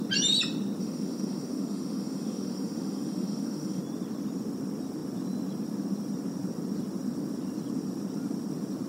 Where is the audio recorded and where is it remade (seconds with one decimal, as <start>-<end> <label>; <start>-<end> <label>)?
0.0-0.8 recorded; 0.8-3.8 remade; 3.8-8.9 recorded